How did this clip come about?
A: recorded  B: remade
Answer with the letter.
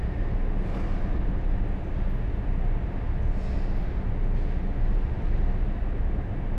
A